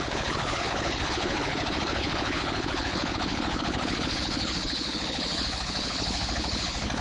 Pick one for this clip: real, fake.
fake